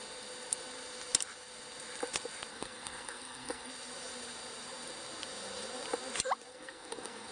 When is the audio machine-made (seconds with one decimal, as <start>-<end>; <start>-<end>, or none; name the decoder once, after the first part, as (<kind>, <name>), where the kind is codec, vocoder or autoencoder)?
2.5-3.7 (codec, SNAC); 6.5-7.3